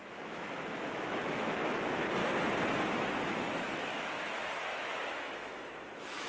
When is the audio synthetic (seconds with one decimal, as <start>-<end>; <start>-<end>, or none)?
0.0-2.2; 2.9-6.3